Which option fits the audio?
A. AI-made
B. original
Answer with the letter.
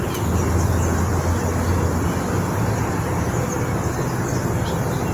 B